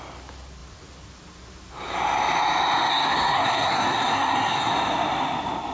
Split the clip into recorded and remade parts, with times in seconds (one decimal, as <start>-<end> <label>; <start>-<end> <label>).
0.0-2.9 recorded; 2.9-4.7 remade; 4.7-5.7 recorded